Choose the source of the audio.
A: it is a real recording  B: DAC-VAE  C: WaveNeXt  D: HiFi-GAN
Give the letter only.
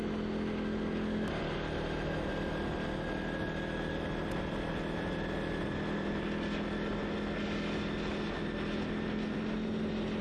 A